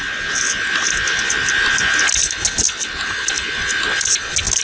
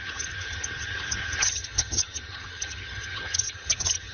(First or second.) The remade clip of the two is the second